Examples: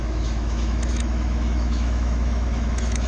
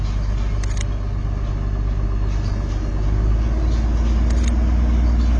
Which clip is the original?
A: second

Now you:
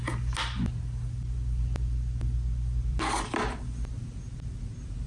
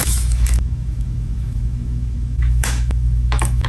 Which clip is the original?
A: first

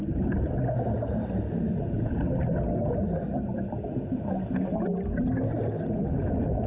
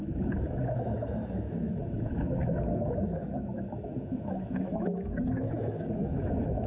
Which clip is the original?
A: first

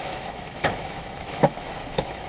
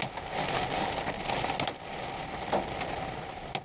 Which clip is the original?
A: second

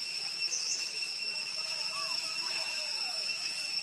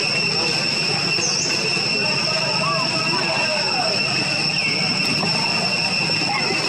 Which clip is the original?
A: second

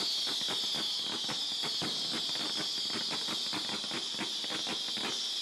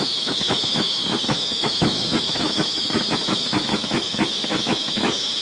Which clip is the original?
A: first